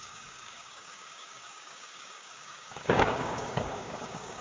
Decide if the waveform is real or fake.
fake